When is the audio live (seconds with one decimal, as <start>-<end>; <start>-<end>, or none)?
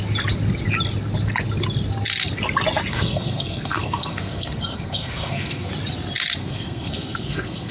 0.0-2.9; 5.7-6.4